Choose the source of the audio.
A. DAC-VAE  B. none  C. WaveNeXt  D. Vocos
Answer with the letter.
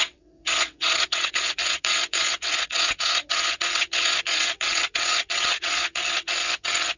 C